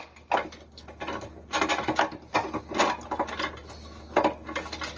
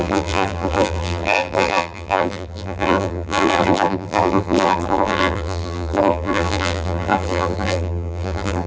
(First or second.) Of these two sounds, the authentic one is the first